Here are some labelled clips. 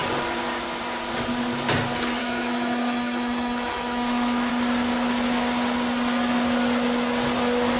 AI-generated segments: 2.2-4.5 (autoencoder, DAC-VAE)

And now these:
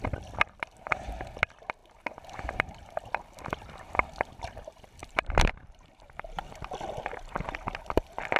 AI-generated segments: 5.0-6.5 (vocoder, BigVGAN v2)